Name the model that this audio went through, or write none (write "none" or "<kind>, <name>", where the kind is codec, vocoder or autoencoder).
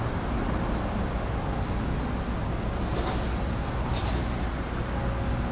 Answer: none